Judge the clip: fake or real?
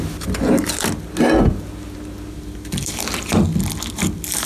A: real